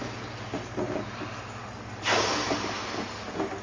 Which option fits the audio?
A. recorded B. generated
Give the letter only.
A